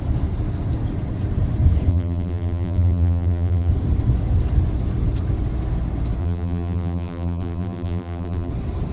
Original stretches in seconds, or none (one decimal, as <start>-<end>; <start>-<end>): 0.0-1.9; 3.7-6.2; 8.5-8.9